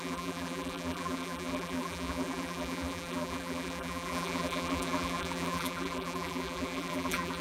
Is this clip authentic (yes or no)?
no